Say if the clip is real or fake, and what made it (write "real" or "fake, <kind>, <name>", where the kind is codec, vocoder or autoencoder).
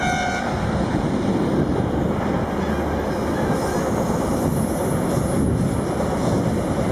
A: real